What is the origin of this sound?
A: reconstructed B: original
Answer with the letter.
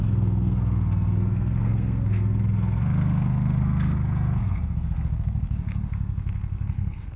A